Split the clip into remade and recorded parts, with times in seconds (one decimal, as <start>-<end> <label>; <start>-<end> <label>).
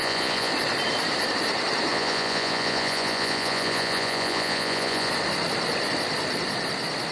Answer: 0.0-0.5 remade; 0.5-1.9 recorded; 1.9-5.1 remade; 5.1-7.1 recorded